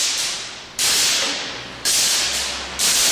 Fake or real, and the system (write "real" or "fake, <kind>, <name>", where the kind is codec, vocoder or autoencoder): real